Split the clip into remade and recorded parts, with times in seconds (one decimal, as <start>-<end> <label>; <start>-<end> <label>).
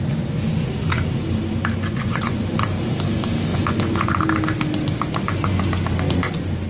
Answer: 0.0-1.9 recorded; 1.9-2.4 remade; 2.4-3.5 recorded; 3.5-4.2 remade; 4.2-6.7 recorded